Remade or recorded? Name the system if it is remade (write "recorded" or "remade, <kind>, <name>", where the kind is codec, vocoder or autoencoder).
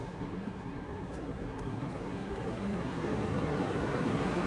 remade, codec, SNAC